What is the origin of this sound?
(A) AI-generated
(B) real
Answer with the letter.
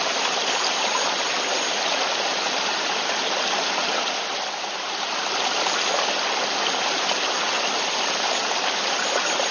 B